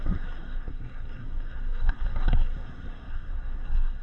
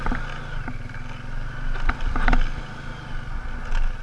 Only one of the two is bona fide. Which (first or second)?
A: second